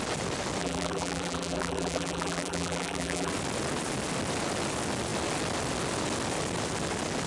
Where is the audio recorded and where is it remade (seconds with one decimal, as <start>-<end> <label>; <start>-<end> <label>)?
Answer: 0.0-0.6 recorded; 0.6-3.3 remade; 3.3-7.3 recorded